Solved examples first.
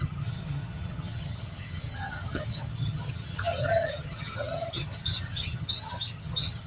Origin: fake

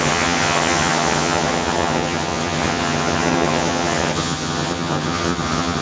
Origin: fake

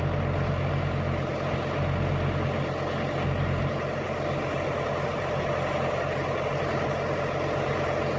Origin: real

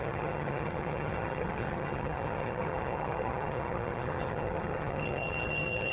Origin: fake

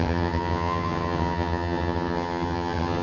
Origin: fake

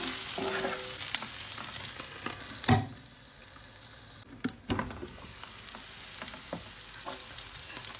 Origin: real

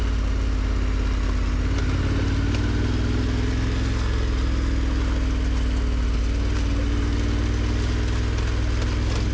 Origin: real